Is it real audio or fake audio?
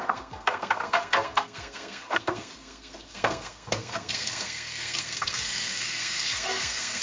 fake